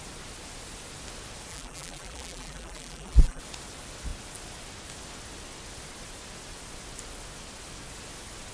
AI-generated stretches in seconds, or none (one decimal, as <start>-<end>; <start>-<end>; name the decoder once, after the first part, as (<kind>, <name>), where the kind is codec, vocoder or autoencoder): 1.5-3.4 (vocoder, BigVGAN v2)